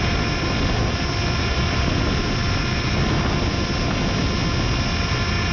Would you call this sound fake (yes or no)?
no